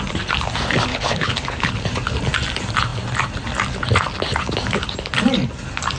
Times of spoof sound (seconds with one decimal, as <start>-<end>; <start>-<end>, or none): 0.9-1.7